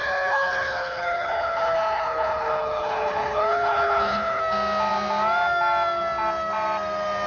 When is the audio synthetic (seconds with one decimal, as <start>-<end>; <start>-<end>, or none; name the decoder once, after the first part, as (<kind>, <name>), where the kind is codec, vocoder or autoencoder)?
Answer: 0.0-4.4 (codec, HILCodec)